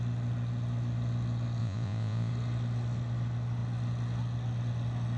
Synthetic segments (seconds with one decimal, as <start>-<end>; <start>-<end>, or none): 1.6-2.3